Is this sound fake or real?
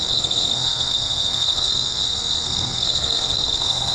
fake